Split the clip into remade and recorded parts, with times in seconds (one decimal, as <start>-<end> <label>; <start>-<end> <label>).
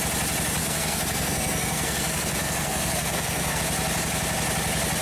0.0-0.6 recorded; 0.6-3.6 remade; 3.6-5.0 recorded